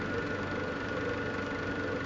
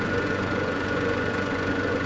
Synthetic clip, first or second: second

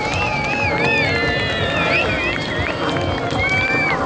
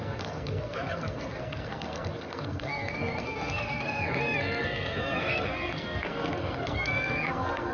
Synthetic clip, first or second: second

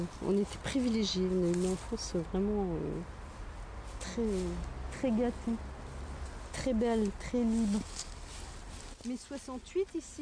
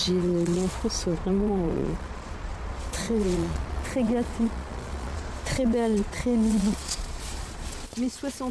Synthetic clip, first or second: second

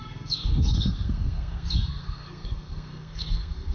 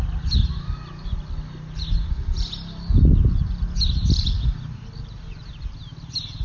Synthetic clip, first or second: first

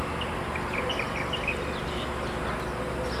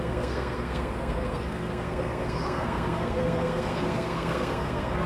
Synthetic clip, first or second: second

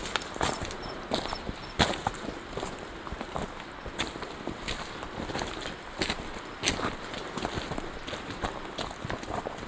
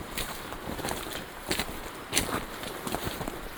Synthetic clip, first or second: second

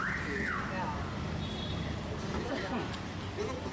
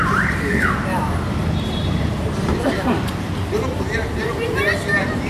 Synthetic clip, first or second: second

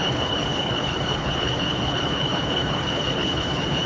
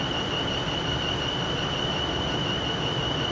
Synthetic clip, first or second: first